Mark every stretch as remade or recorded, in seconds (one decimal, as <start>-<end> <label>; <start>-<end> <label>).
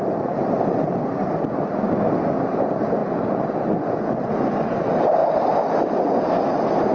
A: 0.0-6.9 recorded